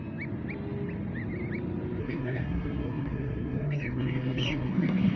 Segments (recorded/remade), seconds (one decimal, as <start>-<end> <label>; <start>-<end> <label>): 0.0-2.0 recorded; 2.0-5.2 remade